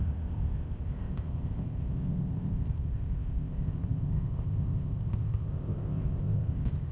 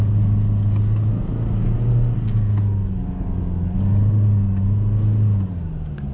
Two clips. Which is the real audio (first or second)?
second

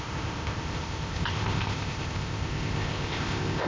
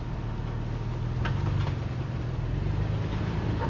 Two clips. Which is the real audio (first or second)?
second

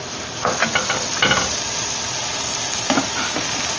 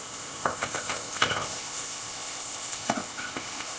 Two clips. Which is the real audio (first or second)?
first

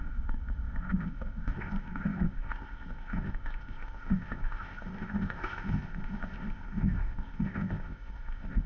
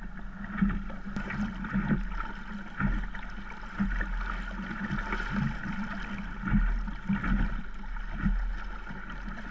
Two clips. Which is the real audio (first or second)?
second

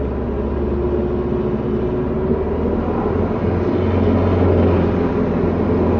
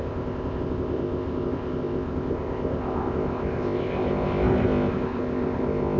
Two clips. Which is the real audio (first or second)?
first